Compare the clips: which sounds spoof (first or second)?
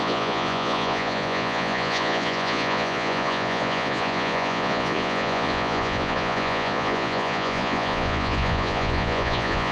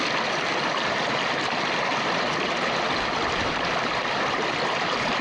first